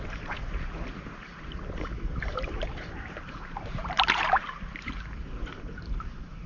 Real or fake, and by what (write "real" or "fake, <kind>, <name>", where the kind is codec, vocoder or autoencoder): fake, vocoder, BigVGAN v2